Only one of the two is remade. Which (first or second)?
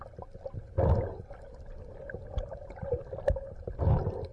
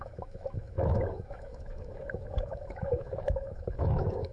second